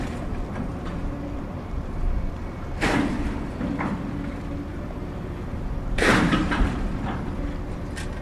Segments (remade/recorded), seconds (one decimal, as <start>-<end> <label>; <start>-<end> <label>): 0.0-0.7 recorded; 0.7-2.8 remade; 2.8-4.7 recorded; 4.7-6.5 remade; 6.5-8.2 recorded